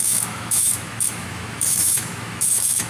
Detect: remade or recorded remade